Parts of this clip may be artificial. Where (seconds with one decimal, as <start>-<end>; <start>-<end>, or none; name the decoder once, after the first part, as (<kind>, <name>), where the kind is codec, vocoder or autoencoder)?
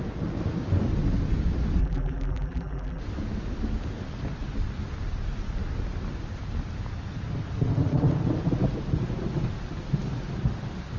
1.8-3.0 (vocoder, BigVGAN v2)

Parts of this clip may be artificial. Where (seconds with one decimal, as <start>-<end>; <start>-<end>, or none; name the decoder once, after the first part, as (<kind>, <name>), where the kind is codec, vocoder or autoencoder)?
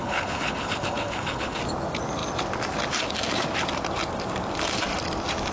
0.0-1.6 (codec, HILCodec)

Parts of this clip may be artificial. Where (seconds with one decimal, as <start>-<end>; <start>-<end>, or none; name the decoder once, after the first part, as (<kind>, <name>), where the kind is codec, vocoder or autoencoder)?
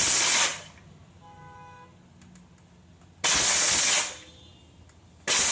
none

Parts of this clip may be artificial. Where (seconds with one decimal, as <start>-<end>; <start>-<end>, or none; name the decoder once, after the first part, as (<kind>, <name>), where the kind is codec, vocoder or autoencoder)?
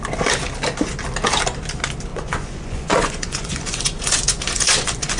2.1-5.2 (vocoder, Vocos)